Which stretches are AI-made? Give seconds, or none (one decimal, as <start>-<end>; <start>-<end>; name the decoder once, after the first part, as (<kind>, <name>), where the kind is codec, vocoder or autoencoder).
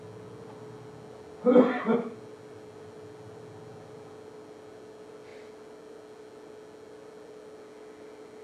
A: none